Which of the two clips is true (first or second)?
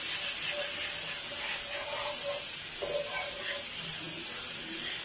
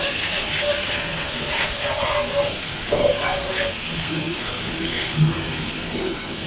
first